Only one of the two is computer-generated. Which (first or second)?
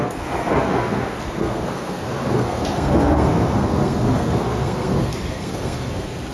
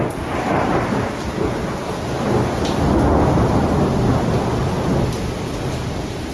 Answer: first